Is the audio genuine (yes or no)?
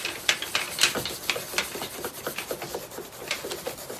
yes